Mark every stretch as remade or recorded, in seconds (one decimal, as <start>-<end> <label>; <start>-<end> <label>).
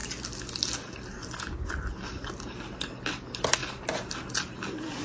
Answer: 0.0-5.0 recorded